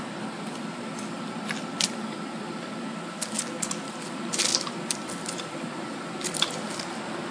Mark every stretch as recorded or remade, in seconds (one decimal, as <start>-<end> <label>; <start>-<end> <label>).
0.0-7.3 recorded